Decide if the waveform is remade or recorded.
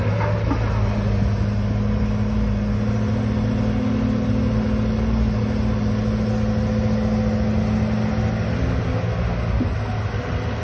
recorded